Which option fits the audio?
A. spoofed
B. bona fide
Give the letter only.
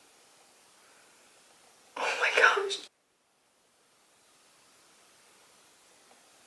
B